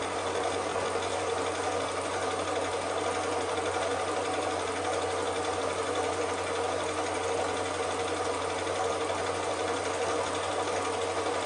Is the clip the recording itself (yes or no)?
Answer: yes